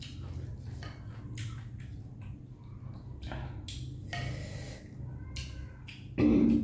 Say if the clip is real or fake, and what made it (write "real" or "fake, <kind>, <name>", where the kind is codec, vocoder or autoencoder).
real